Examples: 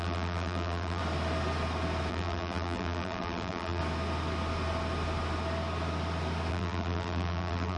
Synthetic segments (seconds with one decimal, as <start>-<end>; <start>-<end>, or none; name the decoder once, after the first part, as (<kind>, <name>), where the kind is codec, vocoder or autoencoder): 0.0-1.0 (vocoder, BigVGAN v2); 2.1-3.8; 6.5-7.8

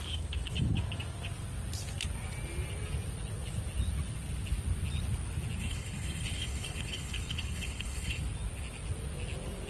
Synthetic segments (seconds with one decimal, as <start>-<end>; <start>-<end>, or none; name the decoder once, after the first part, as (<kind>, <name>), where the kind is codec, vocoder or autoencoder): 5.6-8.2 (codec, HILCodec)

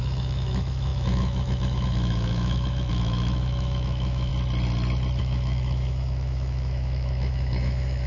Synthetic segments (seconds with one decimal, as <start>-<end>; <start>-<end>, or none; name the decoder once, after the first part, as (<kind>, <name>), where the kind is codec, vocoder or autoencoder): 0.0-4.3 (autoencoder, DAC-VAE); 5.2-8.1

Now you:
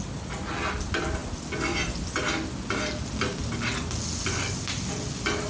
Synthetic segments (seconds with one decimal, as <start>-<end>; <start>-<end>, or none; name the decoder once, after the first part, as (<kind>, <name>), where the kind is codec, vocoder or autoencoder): none

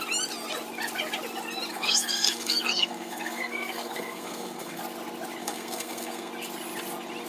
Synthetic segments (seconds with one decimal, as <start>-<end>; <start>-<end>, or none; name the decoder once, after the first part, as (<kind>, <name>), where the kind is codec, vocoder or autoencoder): 1.7-4.8 (codec, SNAC); 5.4-6.3

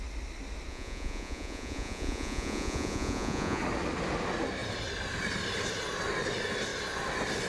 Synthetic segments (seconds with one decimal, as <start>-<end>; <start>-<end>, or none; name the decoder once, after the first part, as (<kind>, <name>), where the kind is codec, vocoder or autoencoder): 0.7-3.6 (vocoder, Vocos)